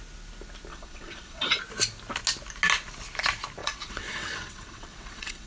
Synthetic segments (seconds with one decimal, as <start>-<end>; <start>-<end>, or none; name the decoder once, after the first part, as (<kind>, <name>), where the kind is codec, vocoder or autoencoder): 0.7-1.6 (vocoder, WaveNeXt); 3.6-5.5